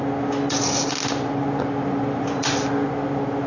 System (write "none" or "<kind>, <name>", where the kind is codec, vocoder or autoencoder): none